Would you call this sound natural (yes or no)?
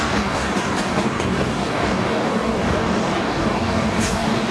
no